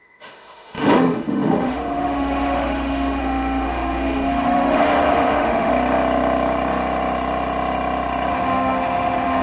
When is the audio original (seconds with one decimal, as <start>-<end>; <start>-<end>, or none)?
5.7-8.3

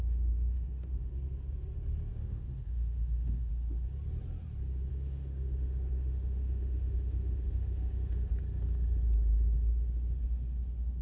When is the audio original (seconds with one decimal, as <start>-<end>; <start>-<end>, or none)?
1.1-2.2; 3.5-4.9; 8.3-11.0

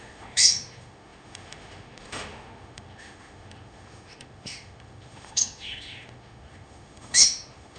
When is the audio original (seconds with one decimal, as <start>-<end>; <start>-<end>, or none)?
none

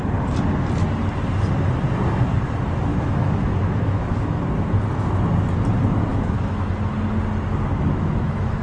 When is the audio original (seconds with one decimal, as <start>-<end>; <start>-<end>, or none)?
0.0-2.9; 4.4-6.1; 6.7-7.5

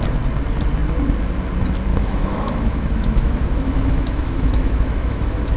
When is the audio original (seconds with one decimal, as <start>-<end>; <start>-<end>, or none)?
0.0-1.9

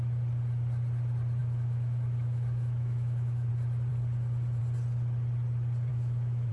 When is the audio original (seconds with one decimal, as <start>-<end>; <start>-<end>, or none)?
0.0-1.4; 3.5-5.9

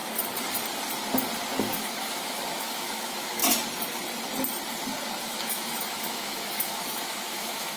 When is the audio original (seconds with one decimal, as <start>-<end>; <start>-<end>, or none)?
0.0-1.6; 3.4-5.2

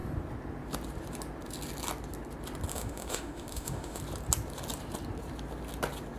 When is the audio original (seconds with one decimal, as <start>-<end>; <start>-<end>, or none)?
0.0-2.7; 4.0-6.2